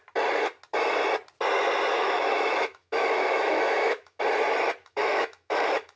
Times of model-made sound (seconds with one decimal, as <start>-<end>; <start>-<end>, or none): 1.9-4.2; 4.8-6.0